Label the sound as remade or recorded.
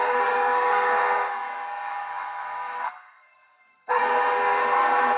remade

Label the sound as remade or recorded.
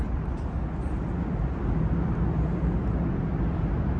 recorded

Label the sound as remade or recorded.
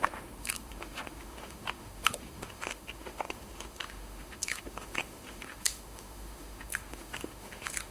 remade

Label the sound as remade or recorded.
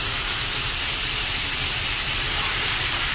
recorded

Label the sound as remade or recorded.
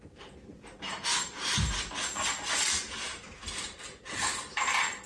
recorded